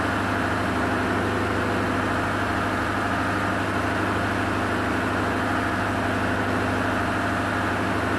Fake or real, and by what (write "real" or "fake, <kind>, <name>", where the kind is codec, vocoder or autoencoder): real